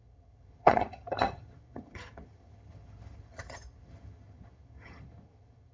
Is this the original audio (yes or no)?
no